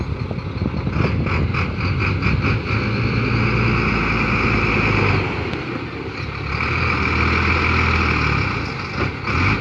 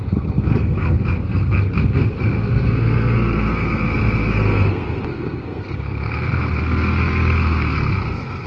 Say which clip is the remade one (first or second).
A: second